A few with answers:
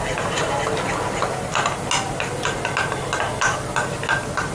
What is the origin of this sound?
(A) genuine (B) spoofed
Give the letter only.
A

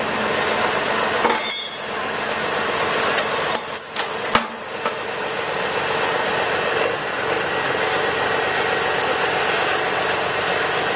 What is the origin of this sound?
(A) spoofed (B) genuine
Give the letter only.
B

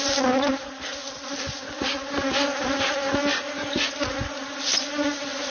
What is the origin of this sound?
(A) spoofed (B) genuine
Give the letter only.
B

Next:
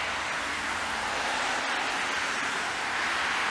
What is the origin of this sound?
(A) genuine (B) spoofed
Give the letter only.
A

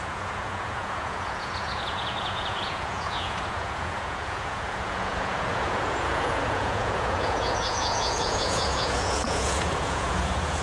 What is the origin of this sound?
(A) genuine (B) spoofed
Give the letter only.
B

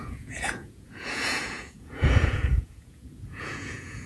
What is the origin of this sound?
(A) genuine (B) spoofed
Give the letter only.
B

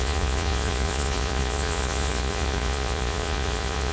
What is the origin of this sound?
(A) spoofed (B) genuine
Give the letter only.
A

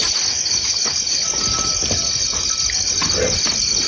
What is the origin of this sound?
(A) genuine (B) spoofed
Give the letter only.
A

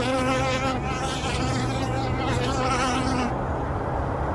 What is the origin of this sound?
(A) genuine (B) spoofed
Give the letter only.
A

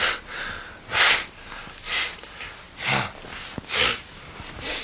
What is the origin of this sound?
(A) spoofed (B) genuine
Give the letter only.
B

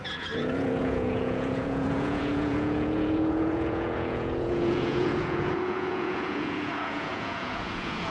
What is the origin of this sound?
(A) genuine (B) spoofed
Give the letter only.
B